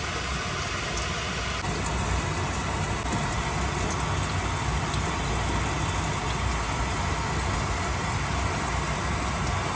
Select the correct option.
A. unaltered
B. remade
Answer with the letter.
A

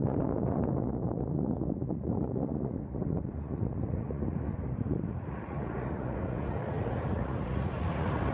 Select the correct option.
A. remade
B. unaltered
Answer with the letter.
A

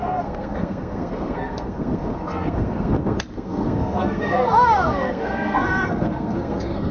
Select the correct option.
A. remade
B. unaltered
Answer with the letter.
A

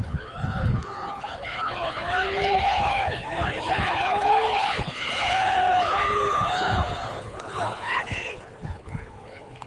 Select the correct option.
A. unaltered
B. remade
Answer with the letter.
B